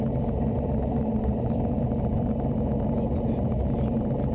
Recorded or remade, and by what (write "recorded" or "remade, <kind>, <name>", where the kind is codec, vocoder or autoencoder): remade, vocoder, BigVGAN v2